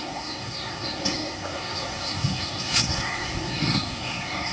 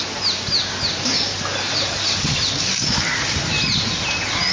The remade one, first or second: first